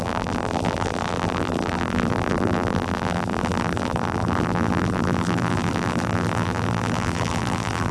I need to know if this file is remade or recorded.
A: remade